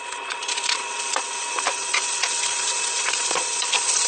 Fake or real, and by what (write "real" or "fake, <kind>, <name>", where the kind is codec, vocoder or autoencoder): fake, vocoder, Vocos